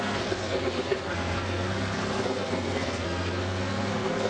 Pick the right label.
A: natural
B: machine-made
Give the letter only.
B